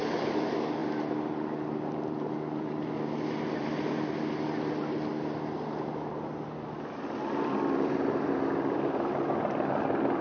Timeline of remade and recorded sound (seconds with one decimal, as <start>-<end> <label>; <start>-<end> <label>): 0.0-0.8 recorded; 0.8-3.8 remade; 3.8-10.2 recorded